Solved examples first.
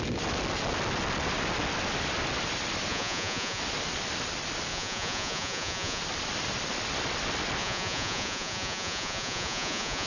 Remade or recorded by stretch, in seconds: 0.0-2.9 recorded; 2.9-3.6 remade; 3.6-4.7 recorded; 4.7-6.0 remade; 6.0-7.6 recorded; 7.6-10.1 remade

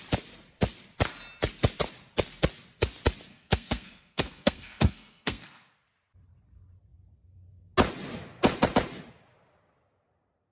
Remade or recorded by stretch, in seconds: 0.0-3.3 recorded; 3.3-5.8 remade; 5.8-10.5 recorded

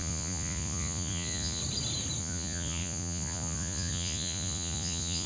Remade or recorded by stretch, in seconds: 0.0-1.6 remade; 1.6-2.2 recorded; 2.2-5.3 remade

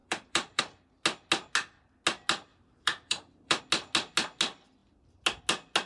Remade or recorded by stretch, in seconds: 0.0-0.6 remade; 0.6-2.5 recorded; 2.5-3.6 remade; 3.6-5.9 recorded